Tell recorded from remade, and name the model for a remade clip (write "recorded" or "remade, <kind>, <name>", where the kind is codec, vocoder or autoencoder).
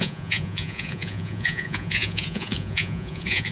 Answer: remade, vocoder, Vocos